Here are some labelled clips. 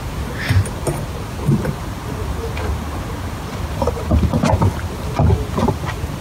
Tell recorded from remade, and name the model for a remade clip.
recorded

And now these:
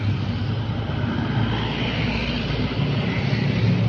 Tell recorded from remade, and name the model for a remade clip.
recorded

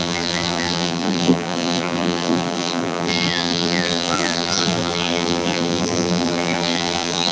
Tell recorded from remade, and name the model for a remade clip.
remade, vocoder, BigVGAN v2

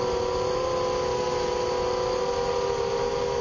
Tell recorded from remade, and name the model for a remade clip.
recorded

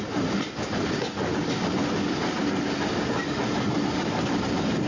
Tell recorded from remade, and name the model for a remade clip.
recorded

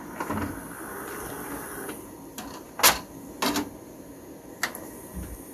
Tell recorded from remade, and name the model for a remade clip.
recorded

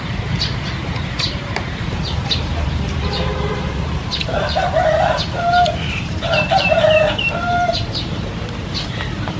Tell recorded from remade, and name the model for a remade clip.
remade, vocoder, BigVGAN v2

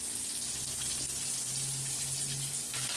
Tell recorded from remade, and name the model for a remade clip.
recorded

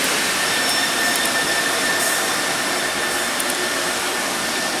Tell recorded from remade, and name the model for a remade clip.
remade, vocoder, BigVGAN v2